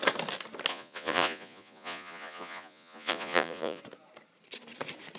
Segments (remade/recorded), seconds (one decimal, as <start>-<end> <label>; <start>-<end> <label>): 0.0-0.7 recorded; 0.7-3.8 remade; 3.8-5.2 recorded